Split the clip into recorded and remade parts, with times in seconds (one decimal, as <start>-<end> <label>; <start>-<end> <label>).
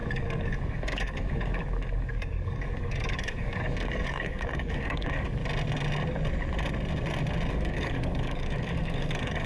0.0-5.4 remade; 5.4-7.5 recorded; 7.5-9.5 remade